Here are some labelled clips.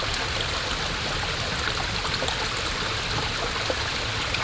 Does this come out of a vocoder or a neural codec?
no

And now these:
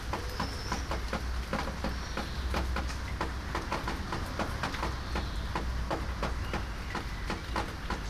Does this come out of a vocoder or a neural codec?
no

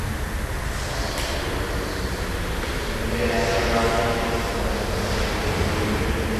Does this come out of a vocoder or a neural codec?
no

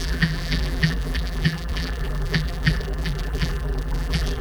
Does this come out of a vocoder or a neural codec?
yes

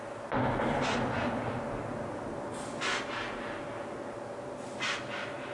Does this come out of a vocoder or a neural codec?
no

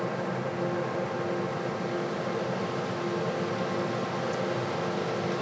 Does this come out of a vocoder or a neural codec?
no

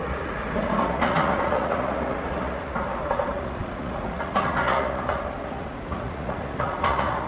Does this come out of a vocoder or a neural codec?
yes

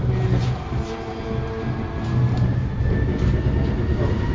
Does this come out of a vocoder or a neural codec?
no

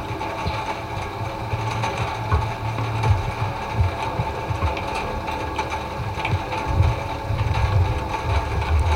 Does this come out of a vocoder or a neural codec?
no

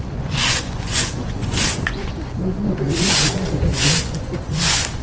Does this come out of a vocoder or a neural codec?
yes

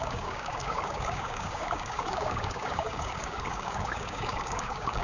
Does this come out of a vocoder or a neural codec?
yes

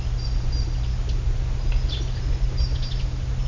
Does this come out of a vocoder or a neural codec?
no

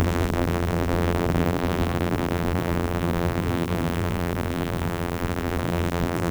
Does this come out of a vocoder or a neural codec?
yes